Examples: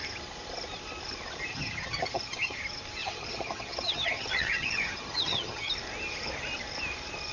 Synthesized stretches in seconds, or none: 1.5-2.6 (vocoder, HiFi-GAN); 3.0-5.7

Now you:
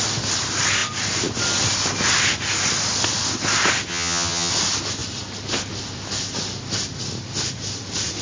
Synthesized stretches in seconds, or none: 3.9-4.5 (vocoder, HiFi-GAN)

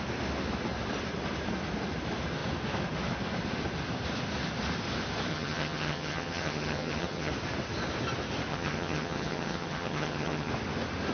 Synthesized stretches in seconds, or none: 5.3-7.3 (vocoder, HiFi-GAN); 8.5-10.5